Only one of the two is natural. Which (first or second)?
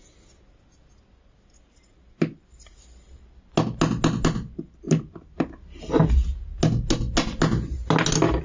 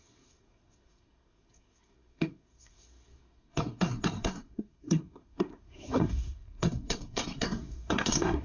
first